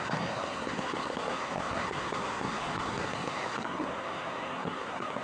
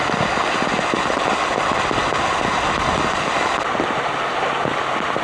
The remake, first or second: first